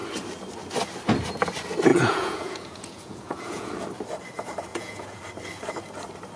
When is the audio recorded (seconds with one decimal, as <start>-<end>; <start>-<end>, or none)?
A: 0.0-1.9; 3.7-4.7; 5.2-6.4